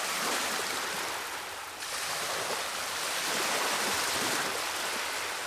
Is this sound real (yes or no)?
yes